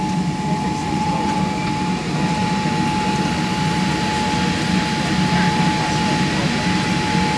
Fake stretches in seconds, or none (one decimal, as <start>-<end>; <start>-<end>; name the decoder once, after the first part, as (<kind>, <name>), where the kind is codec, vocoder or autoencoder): 0.8-1.4 (vocoder, Vocos)